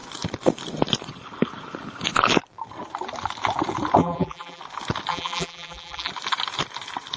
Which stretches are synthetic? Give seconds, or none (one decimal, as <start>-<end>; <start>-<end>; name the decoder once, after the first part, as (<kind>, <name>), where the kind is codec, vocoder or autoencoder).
4.0-4.6 (vocoder, BigVGAN v2); 5.1-6.1